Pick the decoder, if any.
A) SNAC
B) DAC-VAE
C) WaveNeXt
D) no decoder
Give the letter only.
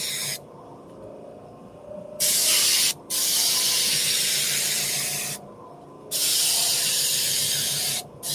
D